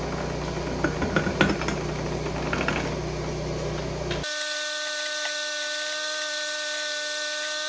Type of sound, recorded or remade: recorded